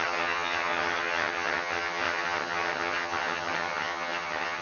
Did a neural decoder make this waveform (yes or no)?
yes